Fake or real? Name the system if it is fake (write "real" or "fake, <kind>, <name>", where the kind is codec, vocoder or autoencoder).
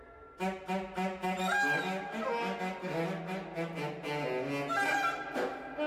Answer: real